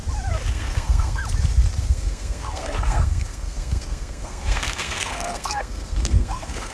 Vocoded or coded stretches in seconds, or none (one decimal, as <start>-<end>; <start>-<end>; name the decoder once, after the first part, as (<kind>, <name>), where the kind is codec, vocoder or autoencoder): 0.5-1.2 (codec, SNAC); 1.8-6.7